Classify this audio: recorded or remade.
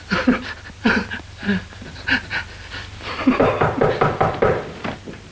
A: recorded